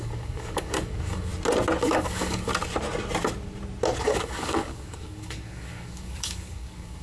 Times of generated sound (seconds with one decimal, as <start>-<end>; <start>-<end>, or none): 0.0-1.3; 1.8-2.5; 4.0-7.0